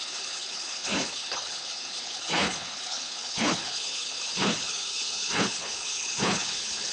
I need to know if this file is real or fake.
fake